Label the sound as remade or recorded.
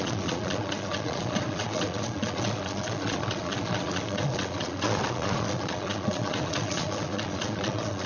remade